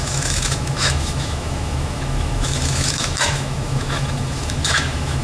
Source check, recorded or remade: remade